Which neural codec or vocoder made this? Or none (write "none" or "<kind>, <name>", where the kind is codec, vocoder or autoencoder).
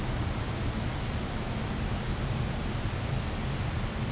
none